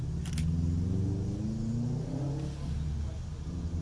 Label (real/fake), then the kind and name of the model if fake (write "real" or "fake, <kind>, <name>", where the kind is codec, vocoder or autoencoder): real